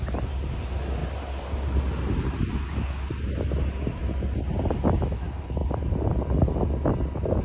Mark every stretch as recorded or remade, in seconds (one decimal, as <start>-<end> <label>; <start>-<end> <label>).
0.0-7.4 recorded